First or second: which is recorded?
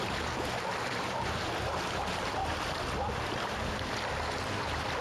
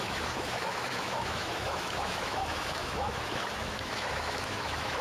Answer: first